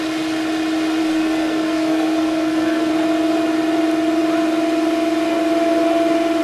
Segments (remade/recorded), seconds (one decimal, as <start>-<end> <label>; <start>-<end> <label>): 0.0-1.0 recorded; 1.0-2.9 remade; 2.9-6.4 recorded